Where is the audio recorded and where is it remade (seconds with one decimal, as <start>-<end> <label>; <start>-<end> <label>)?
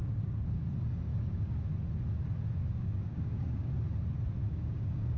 0.0-0.6 remade; 0.6-1.1 recorded; 1.1-1.7 remade; 1.7-2.6 recorded; 2.6-3.7 remade; 3.7-4.4 recorded; 4.4-5.2 remade